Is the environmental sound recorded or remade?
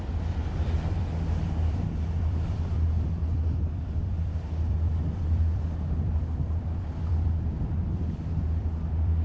remade